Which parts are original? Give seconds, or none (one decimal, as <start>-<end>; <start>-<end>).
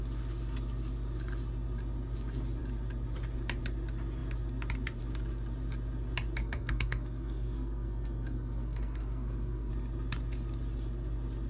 0.0-6.4; 9.7-11.5